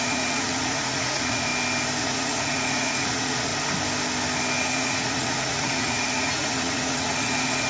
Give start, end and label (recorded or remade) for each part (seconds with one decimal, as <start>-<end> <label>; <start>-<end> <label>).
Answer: 0.0-1.5 remade; 1.5-2.0 recorded; 2.0-3.5 remade; 3.5-4.6 recorded; 4.6-7.7 remade